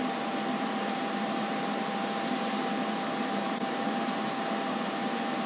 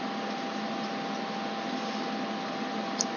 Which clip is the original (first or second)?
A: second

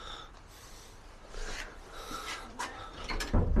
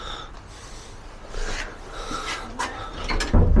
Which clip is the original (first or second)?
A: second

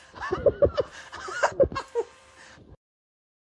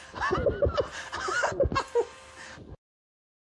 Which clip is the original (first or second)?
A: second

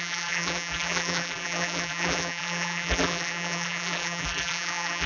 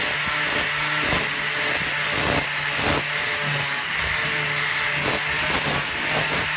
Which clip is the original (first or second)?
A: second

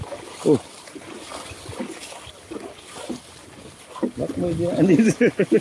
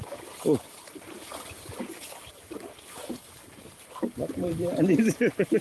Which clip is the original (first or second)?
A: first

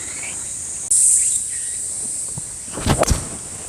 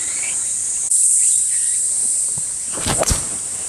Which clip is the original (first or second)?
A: first